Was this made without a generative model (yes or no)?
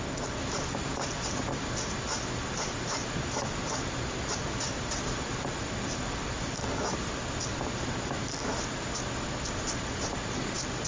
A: yes